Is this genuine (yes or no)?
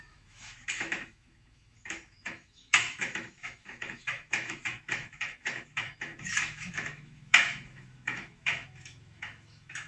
no